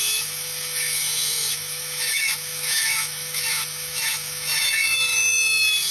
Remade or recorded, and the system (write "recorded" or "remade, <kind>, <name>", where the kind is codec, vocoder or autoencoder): remade, autoencoder, DAC-VAE